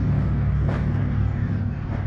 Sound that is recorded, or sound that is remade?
remade